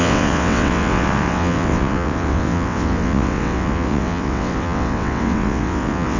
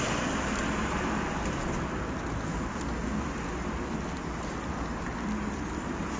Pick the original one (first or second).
second